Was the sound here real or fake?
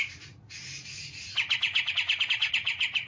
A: fake